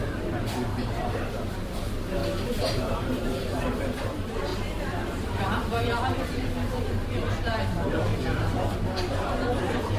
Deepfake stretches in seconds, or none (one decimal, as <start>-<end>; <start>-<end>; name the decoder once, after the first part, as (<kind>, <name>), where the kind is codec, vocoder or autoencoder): 0.0-2.2 (vocoder, BigVGAN v2); 2.9-8.1; 9.1-10.0